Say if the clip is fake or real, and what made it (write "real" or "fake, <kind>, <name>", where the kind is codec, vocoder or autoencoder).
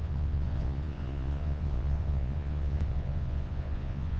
fake, vocoder, Vocos